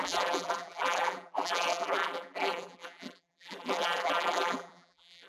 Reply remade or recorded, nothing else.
remade